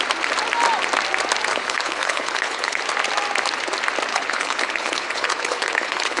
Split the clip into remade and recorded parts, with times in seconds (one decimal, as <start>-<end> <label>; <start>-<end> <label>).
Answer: 0.0-1.5 recorded; 1.5-2.8 remade; 2.8-4.1 recorded; 4.1-6.2 remade